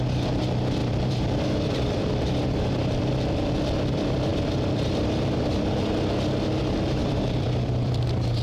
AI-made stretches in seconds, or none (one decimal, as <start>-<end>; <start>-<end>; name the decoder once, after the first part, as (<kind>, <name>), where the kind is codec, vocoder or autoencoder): 0.8-3.1 (vocoder, BigVGAN v2); 4.3-5.9; 7.0-8.0